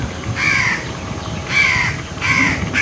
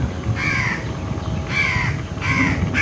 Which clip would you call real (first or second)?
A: second